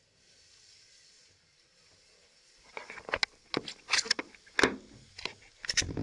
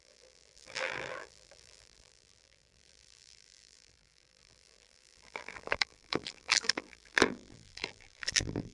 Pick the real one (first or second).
first